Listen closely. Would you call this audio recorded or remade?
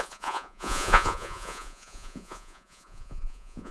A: remade